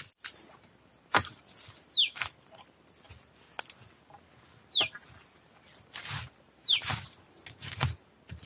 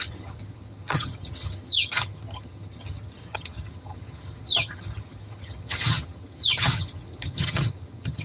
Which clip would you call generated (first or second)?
second